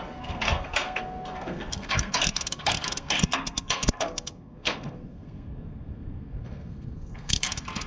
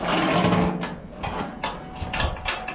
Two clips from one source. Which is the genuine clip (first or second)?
second